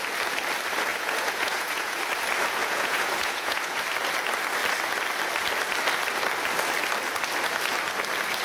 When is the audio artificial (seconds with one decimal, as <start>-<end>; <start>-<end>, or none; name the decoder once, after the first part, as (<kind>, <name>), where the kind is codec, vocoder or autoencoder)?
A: 0.9-2.0 (vocoder, Vocos); 2.6-3.8